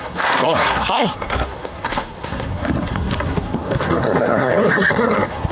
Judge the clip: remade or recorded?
remade